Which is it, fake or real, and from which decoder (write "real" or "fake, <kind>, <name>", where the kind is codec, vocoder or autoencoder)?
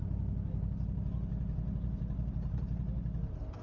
real